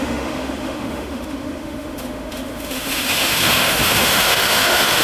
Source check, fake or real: fake